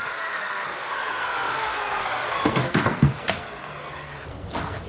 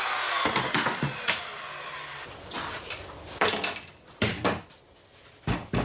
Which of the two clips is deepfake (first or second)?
first